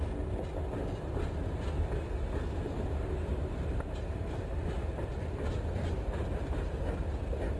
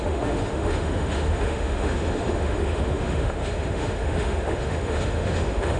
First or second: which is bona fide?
first